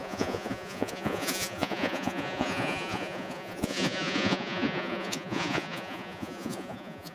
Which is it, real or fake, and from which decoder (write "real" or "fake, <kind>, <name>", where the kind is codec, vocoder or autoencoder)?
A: fake, vocoder, Vocos